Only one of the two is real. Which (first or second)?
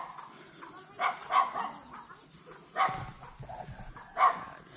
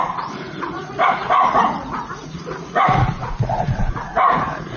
first